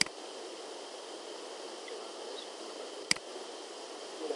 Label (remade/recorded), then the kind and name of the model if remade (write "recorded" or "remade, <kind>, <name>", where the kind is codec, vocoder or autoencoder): recorded